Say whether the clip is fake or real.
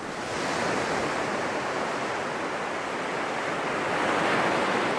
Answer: real